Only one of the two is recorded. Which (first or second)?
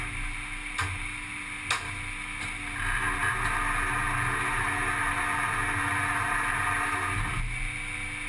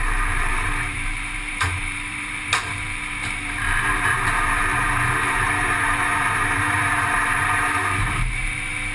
first